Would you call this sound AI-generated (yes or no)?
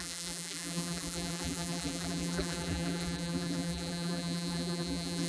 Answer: yes